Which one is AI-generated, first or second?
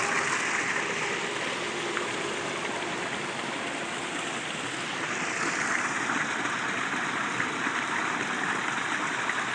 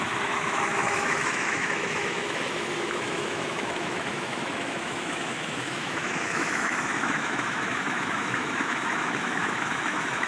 second